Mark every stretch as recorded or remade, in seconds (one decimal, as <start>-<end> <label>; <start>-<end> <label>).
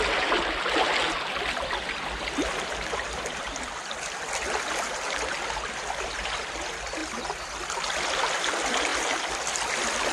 0.0-10.1 recorded